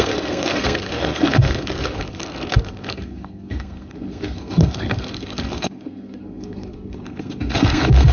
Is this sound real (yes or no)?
no